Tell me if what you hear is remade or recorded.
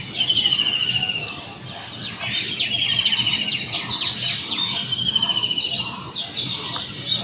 recorded